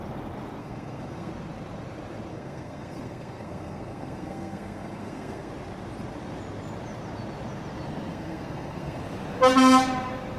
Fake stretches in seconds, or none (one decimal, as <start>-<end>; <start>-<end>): 0.6-1.3; 2.3-5.5; 8.1-9.0